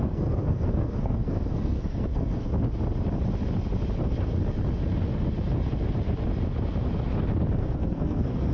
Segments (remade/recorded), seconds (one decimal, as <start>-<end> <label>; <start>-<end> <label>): 0.0-2.5 remade; 2.5-7.6 recorded; 7.6-8.5 remade